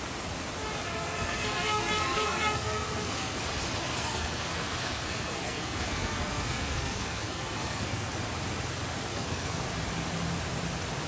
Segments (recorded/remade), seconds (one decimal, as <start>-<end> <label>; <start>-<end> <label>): 0.0-0.9 recorded; 0.9-3.4 remade; 3.4-3.8 recorded; 3.8-8.1 remade; 8.1-9.1 recorded; 9.1-9.6 remade; 9.6-11.1 recorded